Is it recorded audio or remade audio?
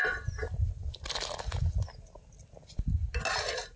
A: recorded